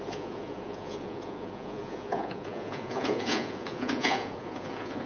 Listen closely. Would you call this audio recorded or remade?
remade